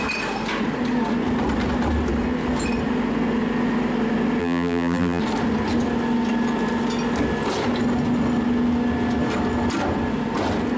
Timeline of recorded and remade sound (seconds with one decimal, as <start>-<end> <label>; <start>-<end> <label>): 0.0-4.4 recorded; 4.4-5.2 remade; 5.2-10.8 recorded